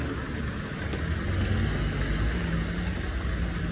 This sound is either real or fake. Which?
real